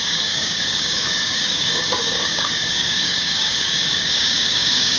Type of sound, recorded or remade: remade